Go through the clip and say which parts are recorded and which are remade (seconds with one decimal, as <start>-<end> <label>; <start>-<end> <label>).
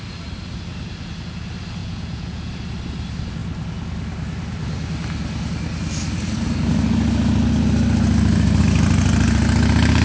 0.0-1.8 recorded; 1.8-2.5 remade; 2.5-10.0 recorded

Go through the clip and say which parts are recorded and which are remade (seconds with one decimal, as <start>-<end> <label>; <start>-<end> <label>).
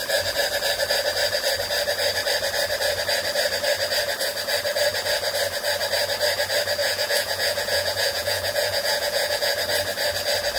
0.0-6.8 recorded; 6.8-9.5 remade; 9.5-10.6 recorded